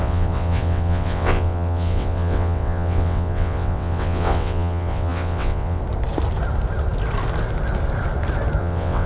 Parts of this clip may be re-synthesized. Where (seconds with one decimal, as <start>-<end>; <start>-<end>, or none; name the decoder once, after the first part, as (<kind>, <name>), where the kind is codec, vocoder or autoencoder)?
0.0-5.8 (vocoder, WaveNeXt); 8.6-9.1